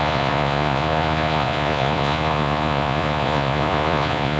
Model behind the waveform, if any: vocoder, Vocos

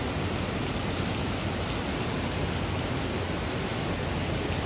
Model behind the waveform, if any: none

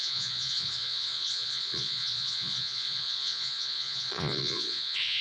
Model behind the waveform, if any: vocoder, Vocos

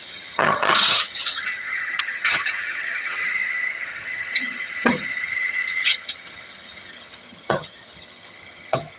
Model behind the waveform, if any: vocoder, HiFi-GAN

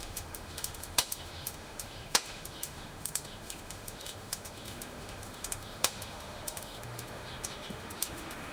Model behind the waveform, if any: autoencoder, DAC-VAE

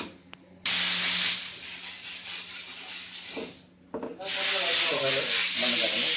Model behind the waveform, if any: none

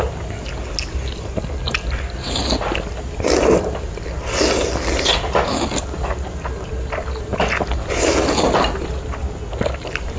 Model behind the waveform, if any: none